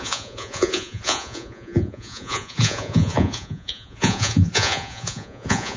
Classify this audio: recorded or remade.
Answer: remade